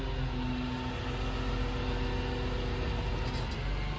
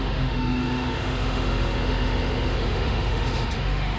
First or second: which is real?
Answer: first